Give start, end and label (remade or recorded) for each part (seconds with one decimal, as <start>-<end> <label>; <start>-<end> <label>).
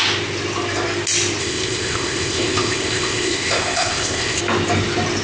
0.0-1.4 recorded; 1.4-4.4 remade; 4.4-5.2 recorded